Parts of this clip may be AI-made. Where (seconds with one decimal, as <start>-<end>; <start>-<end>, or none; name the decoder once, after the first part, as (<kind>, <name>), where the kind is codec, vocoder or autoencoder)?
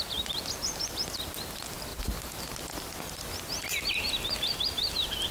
1.9-3.1 (vocoder, BigVGAN v2)